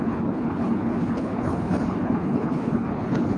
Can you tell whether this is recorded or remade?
remade